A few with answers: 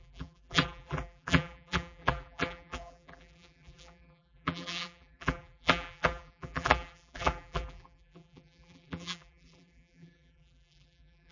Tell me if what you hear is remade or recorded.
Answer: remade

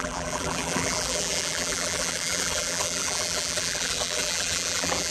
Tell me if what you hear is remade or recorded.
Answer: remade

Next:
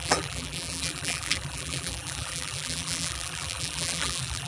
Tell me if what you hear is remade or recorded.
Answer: remade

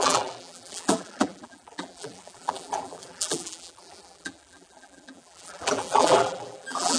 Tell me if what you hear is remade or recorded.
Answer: remade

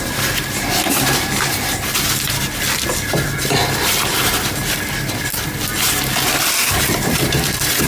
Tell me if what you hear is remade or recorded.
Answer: recorded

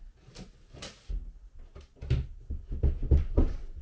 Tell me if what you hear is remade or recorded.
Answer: recorded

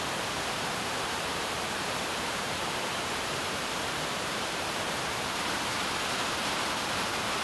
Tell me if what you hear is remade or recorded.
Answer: remade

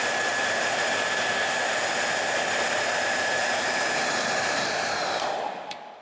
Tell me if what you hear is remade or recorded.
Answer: remade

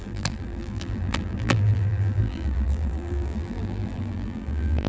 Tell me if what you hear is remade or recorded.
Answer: remade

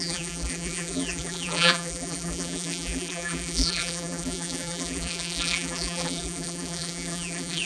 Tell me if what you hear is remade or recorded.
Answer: remade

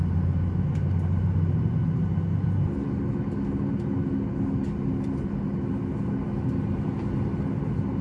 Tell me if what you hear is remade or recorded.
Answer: recorded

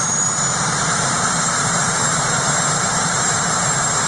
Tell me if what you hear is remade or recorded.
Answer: remade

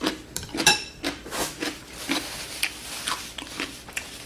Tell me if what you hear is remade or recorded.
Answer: remade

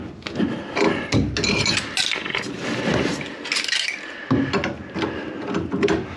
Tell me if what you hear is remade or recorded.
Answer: recorded